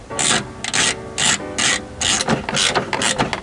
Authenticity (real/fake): real